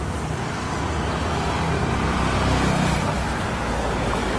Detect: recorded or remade recorded